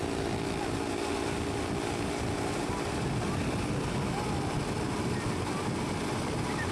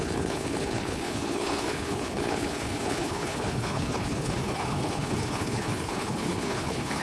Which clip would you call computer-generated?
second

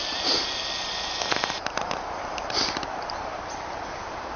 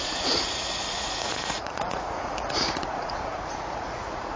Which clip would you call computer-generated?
second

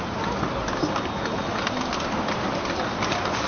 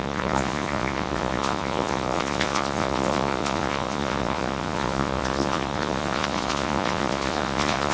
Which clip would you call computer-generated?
second